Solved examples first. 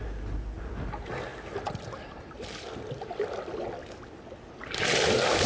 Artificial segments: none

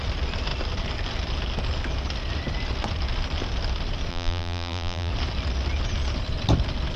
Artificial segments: 4.1-5.1 (vocoder, BigVGAN v2)